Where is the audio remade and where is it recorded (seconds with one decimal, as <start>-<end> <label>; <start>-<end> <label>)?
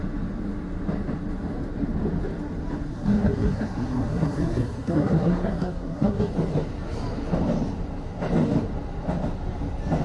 0.0-2.9 recorded; 2.9-6.3 remade; 6.3-10.0 recorded